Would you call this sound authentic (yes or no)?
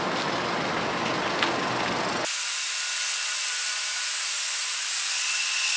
yes